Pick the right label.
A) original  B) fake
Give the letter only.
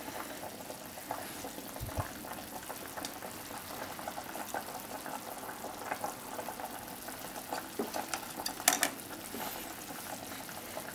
A